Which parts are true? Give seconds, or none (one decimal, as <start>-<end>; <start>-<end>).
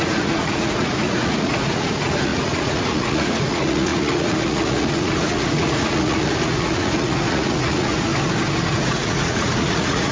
8.1-8.7